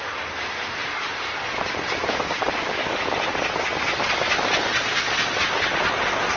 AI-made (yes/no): no